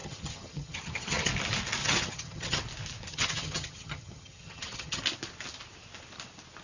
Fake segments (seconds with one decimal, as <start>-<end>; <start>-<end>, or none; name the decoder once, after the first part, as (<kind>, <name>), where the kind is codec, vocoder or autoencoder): 0.0-1.3 (vocoder, HiFi-GAN); 1.8-2.6; 3.1-5.0